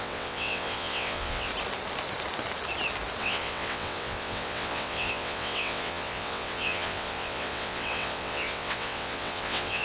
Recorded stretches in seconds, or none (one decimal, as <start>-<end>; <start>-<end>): 1.5-3.2